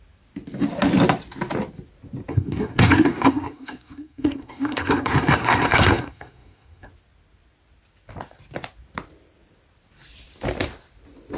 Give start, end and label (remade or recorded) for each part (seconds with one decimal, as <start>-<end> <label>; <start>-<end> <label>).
0.0-2.3 recorded; 2.3-6.9 remade; 6.9-11.4 recorded